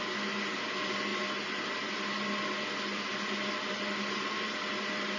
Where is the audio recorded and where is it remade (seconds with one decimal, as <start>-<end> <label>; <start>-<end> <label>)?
0.0-5.2 recorded